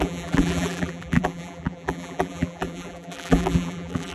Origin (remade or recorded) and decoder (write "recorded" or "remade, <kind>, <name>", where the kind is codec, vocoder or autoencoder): remade, vocoder, BigVGAN v2